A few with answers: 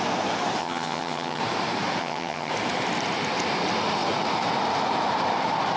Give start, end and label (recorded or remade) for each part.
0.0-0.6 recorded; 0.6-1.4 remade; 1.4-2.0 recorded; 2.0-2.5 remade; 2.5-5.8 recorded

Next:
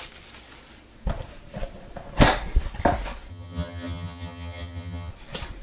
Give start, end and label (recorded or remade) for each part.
0.0-3.3 recorded; 3.3-5.1 remade; 5.1-5.6 recorded